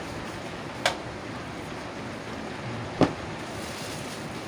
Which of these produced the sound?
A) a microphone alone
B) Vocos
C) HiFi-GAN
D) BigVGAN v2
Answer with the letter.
A